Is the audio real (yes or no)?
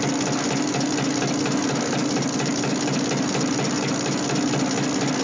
yes